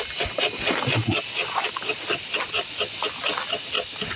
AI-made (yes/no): no